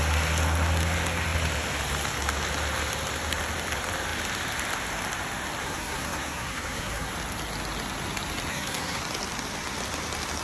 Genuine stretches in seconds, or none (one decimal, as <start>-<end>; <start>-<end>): 0.0-5.6; 7.1-8.5; 9.0-10.4